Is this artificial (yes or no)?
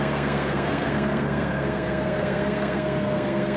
yes